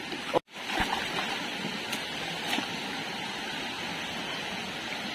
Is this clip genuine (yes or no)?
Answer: yes